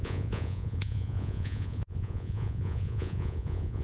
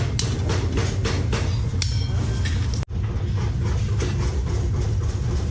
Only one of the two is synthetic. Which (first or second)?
first